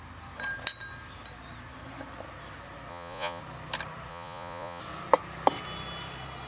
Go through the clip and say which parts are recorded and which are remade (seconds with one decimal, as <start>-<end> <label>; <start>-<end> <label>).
0.0-2.9 recorded; 2.9-3.4 remade; 3.4-4.1 recorded; 4.1-4.8 remade; 4.8-6.5 recorded